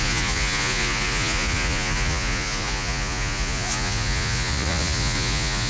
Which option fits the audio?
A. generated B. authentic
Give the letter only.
A